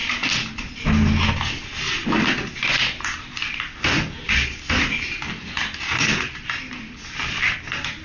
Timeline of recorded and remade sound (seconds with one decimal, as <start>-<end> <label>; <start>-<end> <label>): 0.0-8.0 recorded